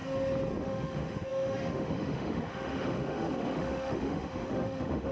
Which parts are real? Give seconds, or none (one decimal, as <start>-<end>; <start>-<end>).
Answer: 0.0-0.6